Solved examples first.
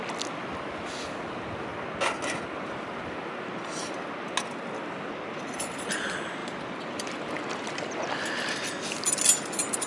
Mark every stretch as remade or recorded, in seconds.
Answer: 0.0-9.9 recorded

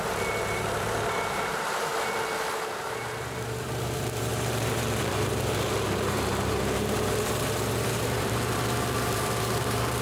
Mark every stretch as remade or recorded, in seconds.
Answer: 0.0-1.9 remade; 1.9-2.8 recorded; 2.8-10.0 remade

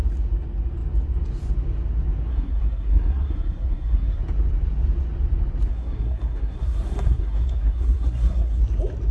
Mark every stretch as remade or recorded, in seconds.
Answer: 0.0-2.3 recorded; 2.3-4.2 remade; 4.2-5.7 recorded; 5.7-8.6 remade; 8.6-9.1 recorded

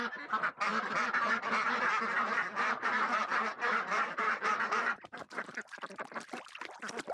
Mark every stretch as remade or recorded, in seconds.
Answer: 0.0-1.9 recorded; 1.9-6.2 remade; 6.2-7.1 recorded

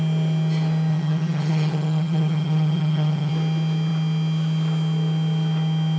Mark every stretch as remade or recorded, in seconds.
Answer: 0.0-0.9 recorded; 0.9-3.3 remade; 3.3-6.0 recorded

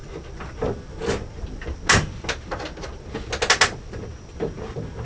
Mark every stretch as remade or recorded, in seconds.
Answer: 0.0-5.0 recorded

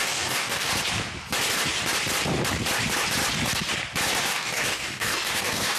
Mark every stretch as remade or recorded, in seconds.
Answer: 0.0-0.7 remade; 0.7-4.2 recorded; 4.2-5.8 remade

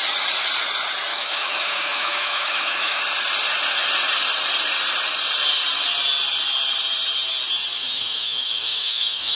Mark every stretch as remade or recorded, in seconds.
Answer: 0.0-1.1 recorded; 1.1-3.0 remade; 3.0-7.8 recorded; 7.8-9.4 remade